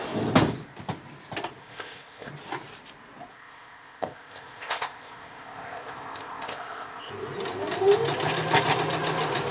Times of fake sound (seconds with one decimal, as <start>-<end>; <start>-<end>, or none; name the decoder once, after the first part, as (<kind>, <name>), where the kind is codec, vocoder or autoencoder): 1.6-2.3 (codec, ZipCodec); 3.3-7.1